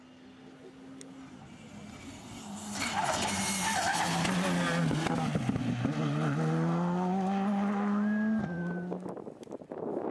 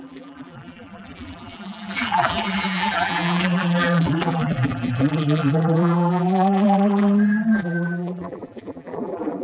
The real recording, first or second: first